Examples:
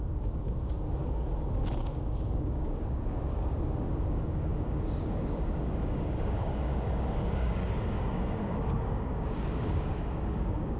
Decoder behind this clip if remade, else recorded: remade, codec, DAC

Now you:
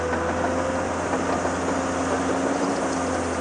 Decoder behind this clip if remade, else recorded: recorded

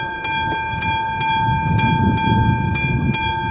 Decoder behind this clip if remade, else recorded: recorded